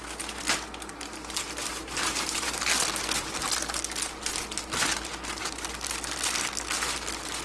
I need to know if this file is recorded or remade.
recorded